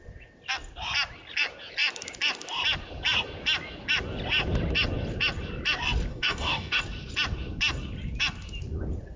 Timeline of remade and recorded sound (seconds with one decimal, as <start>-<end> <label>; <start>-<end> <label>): 0.0-6.1 recorded; 6.1-6.8 remade; 6.8-9.2 recorded